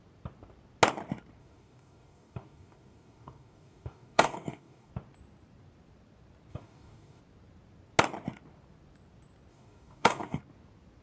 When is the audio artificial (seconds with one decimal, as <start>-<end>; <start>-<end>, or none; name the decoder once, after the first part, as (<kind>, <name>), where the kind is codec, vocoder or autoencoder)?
1.4-4.9 (codec, DAC); 6.5-7.2; 9.5-10.4